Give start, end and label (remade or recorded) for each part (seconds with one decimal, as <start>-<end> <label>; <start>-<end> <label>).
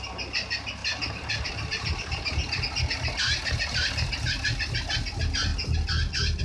0.0-0.8 recorded; 0.8-2.6 remade; 2.6-6.4 recorded